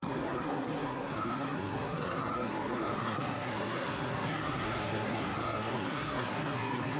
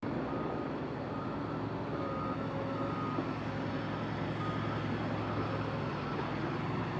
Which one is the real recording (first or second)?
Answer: second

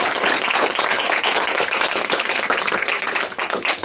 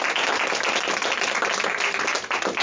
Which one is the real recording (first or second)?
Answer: second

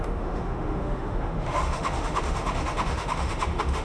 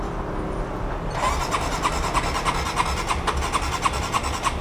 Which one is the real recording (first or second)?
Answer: second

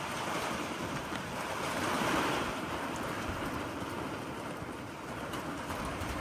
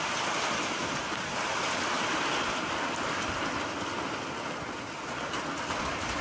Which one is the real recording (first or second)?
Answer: second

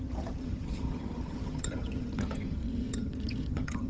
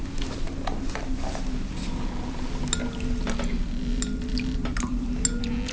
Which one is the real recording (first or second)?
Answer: second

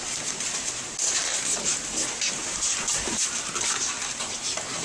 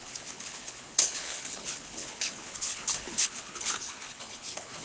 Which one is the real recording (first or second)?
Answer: first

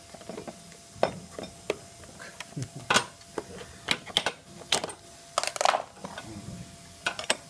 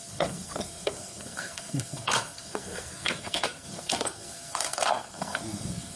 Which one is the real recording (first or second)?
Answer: first